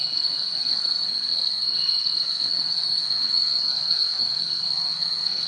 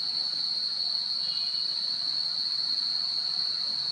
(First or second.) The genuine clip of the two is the second